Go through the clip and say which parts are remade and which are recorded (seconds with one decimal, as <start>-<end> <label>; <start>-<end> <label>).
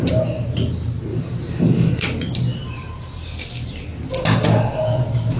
0.0-1.1 recorded; 1.1-1.6 remade; 1.6-2.8 recorded; 2.8-3.3 remade; 3.3-5.4 recorded